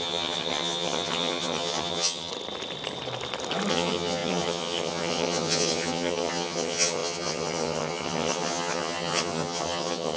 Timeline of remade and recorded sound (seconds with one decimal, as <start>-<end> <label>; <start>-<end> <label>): 0.0-2.3 remade; 2.3-3.7 recorded; 3.7-10.2 remade